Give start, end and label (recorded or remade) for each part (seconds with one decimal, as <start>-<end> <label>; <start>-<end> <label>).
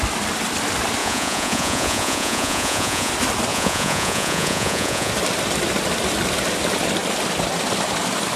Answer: 0.0-1.0 recorded; 1.0-3.1 remade; 3.1-3.5 recorded; 3.5-5.1 remade; 5.1-8.4 recorded